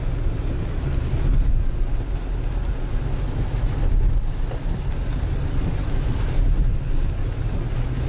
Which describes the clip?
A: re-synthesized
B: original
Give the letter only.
B